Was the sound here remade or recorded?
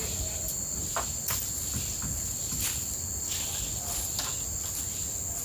recorded